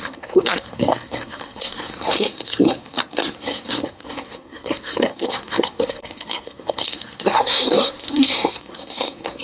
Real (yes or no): no